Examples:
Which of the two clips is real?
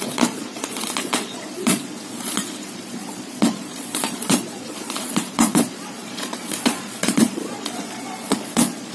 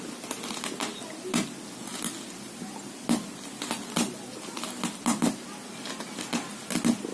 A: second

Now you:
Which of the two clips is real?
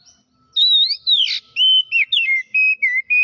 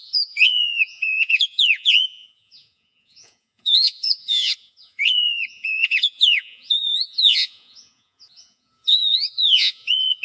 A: first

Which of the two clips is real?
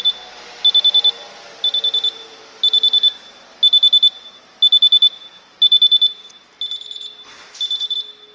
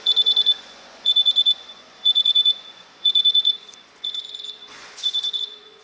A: first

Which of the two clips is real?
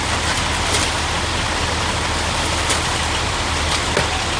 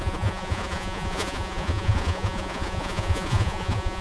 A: first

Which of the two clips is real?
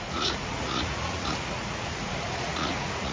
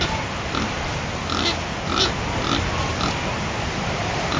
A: second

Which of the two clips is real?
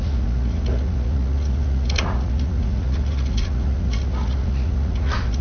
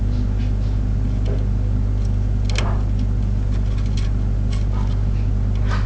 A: second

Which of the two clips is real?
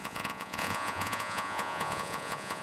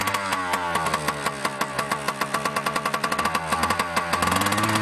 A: second